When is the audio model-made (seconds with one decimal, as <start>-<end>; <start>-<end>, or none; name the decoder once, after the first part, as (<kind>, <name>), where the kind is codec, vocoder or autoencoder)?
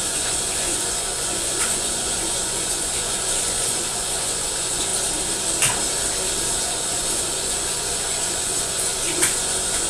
0.0-4.9 (vocoder, Vocos); 6.5-9.9